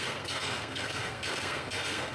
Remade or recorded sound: remade